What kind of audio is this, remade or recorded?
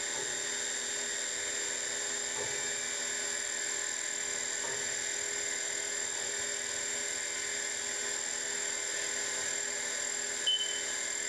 recorded